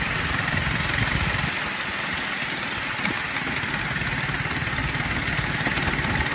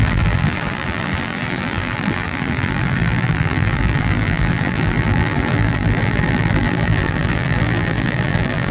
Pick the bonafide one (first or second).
first